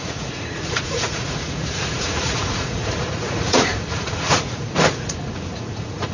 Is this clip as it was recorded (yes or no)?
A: no